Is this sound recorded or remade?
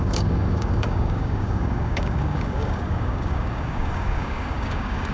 remade